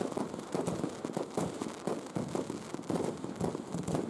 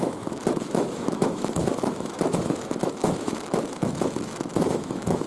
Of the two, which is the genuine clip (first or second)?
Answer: first